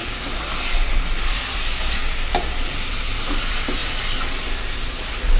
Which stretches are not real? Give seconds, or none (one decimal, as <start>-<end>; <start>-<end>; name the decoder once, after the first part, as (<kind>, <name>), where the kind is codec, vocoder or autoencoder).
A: 0.0-2.0 (vocoder, BigVGAN v2); 2.7-3.8; 4.9-5.4